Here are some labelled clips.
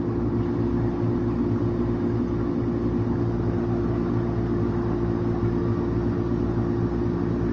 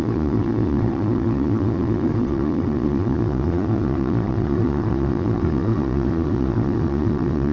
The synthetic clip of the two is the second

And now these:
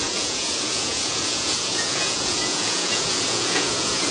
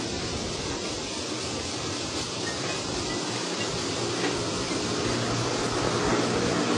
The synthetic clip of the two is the first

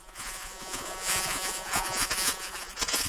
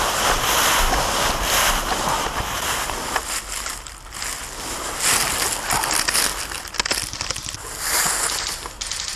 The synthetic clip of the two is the first